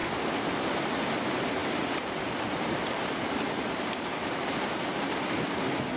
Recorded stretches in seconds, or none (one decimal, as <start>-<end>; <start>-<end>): 0.0-1.6; 5.0-6.0